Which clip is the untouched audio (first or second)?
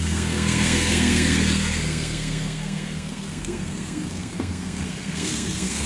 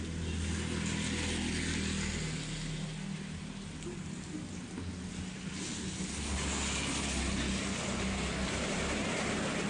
second